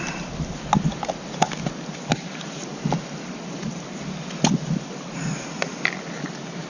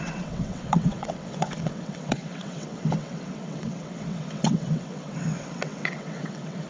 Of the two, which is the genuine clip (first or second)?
first